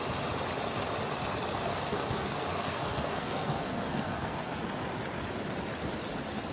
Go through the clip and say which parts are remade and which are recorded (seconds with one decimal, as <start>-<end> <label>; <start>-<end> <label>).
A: 0.0-1.7 recorded; 1.7-4.6 remade; 4.6-6.5 recorded